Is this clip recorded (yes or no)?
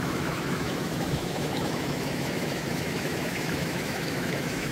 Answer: no